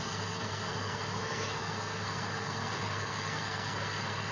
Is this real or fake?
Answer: fake